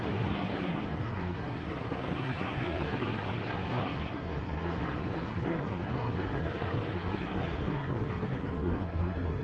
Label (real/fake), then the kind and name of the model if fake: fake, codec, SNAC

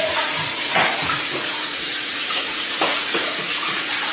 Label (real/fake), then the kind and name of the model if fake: fake, vocoder, Vocos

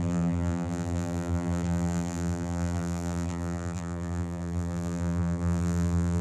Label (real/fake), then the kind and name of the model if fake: fake, vocoder, BigVGAN v2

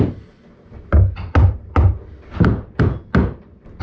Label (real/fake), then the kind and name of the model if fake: real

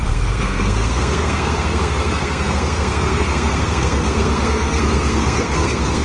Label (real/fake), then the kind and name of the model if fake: fake, codec, SNAC